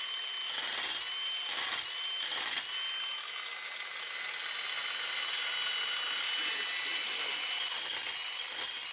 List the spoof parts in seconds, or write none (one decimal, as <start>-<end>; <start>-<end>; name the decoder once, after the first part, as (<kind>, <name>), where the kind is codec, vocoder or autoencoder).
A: 6.9-7.8 (vocoder, BigVGAN v2)